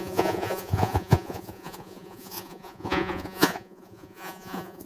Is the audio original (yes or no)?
no